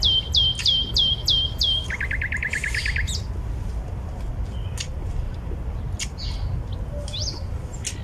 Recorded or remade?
recorded